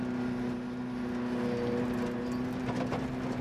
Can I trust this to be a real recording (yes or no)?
yes